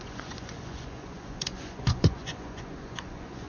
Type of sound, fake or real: fake